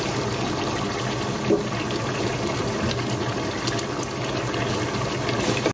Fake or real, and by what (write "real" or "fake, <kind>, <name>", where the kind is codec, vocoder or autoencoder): real